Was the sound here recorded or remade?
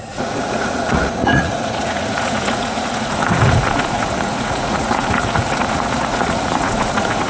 remade